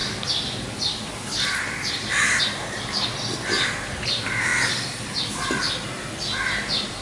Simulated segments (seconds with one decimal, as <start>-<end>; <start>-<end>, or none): 0.0-2.4; 4.5-5.3